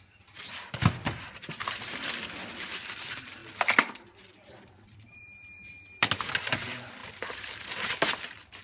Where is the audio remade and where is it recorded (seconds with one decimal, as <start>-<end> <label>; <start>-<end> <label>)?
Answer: 0.0-3.4 remade; 3.4-4.6 recorded; 4.6-8.6 remade